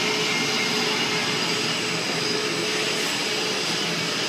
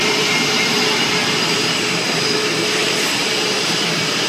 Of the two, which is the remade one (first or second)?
second